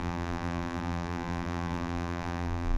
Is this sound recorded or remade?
remade